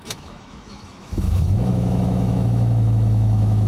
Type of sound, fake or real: fake